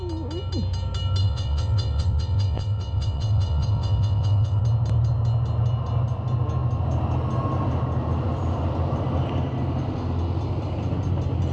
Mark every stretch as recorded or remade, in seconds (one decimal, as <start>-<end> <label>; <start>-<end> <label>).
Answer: 0.0-1.2 recorded; 1.2-4.6 remade; 4.6-11.5 recorded